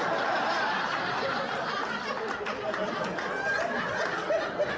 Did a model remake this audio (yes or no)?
no